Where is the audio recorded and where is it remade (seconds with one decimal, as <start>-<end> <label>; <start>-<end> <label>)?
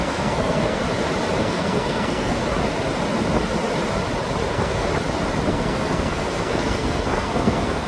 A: 0.0-0.8 remade; 0.8-1.4 recorded; 1.4-2.4 remade; 2.4-4.5 recorded; 4.5-4.9 remade; 4.9-5.5 recorded; 5.5-7.9 remade